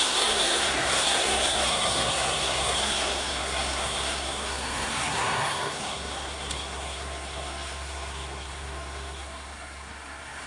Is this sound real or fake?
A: fake